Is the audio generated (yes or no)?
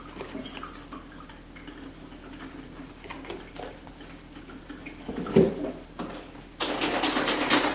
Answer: no